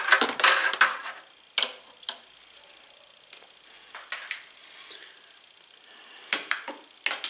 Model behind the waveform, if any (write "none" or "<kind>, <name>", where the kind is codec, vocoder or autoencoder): none